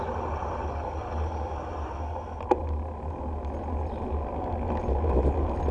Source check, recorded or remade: recorded